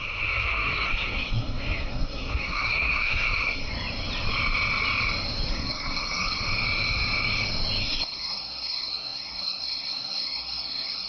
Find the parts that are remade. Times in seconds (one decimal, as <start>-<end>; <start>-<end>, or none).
0.0-3.7; 5.5-6.4; 7.8-11.1